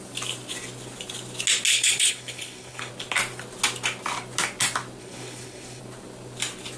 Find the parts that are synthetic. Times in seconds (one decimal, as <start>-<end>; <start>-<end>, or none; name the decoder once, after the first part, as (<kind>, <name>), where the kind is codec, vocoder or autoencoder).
1.7-2.9 (codec, HILCodec); 5.0-5.8